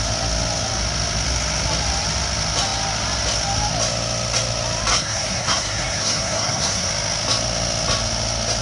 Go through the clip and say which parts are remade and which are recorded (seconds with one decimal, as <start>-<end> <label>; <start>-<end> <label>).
0.0-4.9 recorded; 4.9-6.9 remade; 6.9-8.6 recorded